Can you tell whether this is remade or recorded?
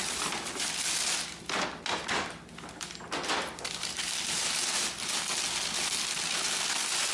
recorded